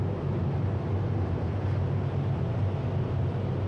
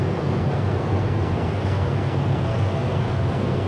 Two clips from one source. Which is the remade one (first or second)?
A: second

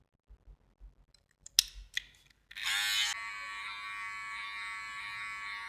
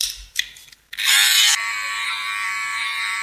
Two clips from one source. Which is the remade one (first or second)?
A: second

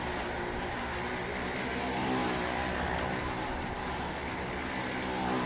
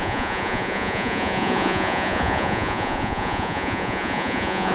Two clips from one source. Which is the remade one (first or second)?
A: second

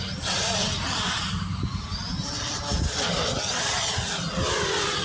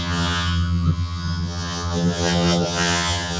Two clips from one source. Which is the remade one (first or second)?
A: second